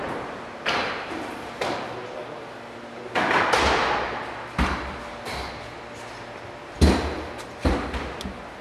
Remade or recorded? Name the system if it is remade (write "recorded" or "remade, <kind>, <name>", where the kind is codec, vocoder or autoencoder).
recorded